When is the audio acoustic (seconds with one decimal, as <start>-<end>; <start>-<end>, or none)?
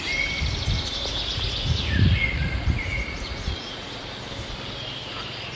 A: 0.0-1.1; 4.0-5.0